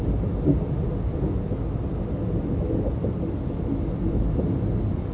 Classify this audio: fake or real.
real